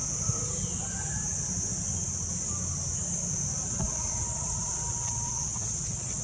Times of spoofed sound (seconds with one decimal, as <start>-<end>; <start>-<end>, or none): 3.7-6.2